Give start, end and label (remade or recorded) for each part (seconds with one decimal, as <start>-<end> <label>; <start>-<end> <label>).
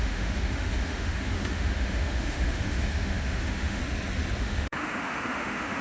0.0-3.8 remade; 3.8-4.4 recorded; 4.4-5.8 remade